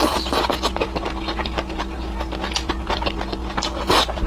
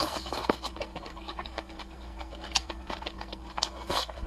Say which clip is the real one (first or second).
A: first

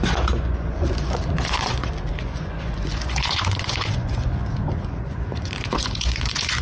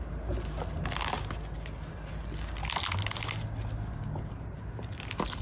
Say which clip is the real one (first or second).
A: second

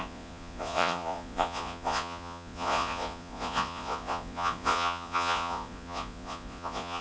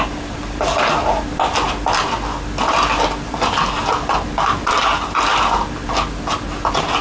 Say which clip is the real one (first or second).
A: second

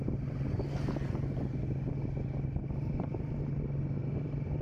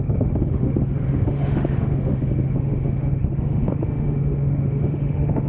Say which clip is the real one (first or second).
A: first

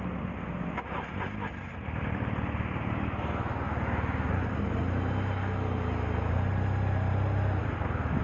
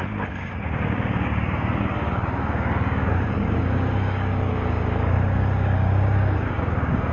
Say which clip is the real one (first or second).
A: first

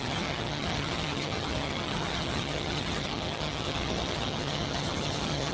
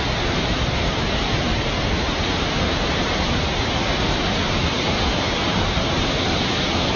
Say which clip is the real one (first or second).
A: second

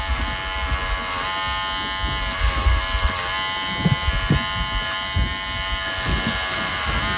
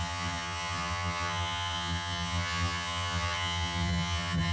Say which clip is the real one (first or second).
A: first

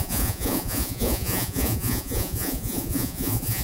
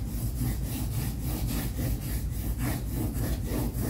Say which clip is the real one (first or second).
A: second